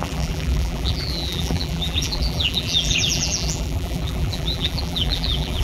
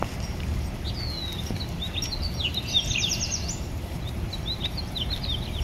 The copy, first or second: first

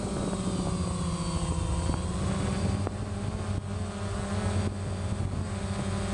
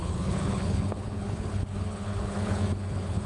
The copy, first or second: second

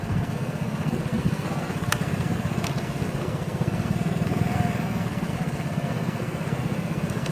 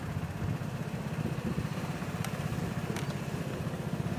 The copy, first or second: first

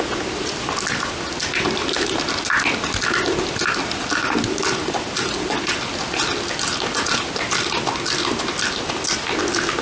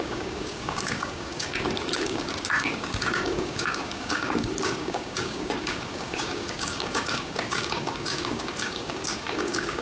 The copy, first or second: second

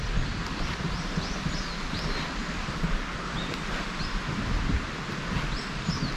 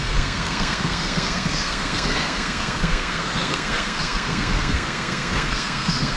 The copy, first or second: second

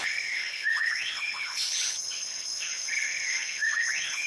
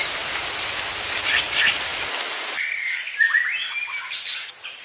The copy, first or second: first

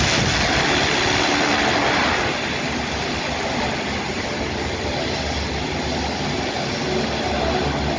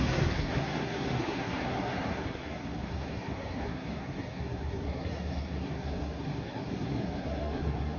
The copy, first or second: second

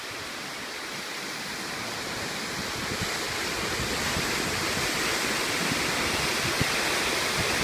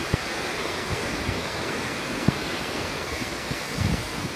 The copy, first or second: second